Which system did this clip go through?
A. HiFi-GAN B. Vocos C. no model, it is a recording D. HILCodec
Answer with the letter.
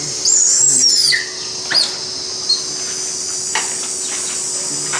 C